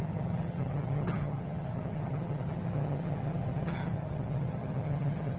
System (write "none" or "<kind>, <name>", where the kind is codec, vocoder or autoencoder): vocoder, HiFi-GAN